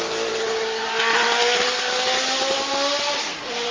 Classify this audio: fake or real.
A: real